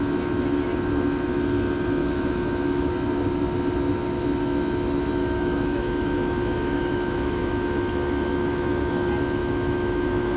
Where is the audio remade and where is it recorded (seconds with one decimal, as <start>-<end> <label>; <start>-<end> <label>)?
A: 0.0-2.0 recorded; 2.0-2.9 remade; 2.9-5.2 recorded; 5.2-7.8 remade; 7.8-8.3 recorded; 8.3-8.9 remade; 8.9-9.4 recorded; 9.4-10.4 remade

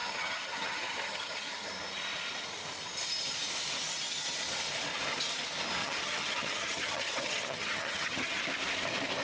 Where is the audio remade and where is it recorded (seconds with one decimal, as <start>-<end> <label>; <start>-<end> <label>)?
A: 0.0-1.7 remade; 1.7-5.8 recorded; 5.8-8.4 remade; 8.4-9.2 recorded

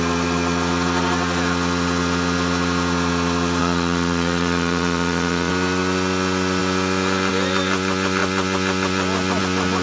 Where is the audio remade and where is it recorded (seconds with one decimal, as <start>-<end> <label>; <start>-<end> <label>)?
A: 0.0-3.6 recorded; 3.6-5.5 remade; 5.5-9.8 recorded

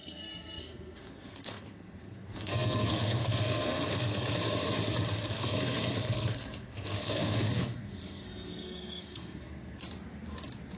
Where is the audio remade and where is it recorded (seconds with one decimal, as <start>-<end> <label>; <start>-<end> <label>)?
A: 0.0-4.3 remade; 4.3-5.3 recorded; 5.3-9.8 remade; 9.8-10.8 recorded

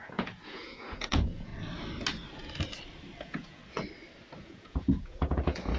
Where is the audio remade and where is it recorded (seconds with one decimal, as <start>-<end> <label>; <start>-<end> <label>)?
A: 0.0-1.5 remade; 1.5-3.2 recorded; 3.2-3.6 remade; 3.6-4.4 recorded; 4.4-5.8 remade

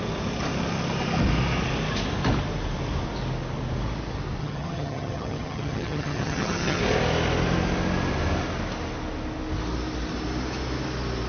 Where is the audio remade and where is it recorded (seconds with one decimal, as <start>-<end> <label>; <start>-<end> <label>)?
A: 0.0-4.4 recorded; 4.4-6.8 remade; 6.8-11.3 recorded

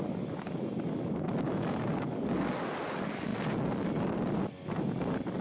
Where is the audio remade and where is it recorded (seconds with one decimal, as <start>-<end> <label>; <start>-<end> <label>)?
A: 0.0-1.9 recorded; 1.9-2.5 remade; 2.5-5.4 recorded